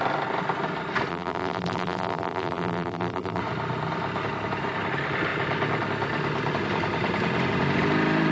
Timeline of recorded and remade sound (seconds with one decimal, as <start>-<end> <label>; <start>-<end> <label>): 0.0-1.1 recorded; 1.1-3.4 remade; 3.4-8.3 recorded